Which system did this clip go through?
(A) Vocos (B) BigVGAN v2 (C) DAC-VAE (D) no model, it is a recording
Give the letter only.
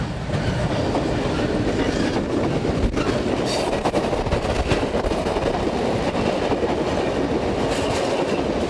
D